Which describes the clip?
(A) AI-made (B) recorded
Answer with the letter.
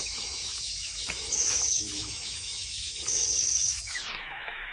A